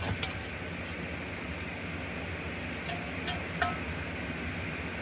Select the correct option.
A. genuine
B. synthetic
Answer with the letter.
A